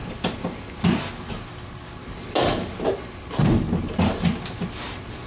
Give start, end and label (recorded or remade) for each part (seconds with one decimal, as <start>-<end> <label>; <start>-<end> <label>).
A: 0.0-5.3 recorded